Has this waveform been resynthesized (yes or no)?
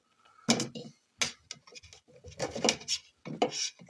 no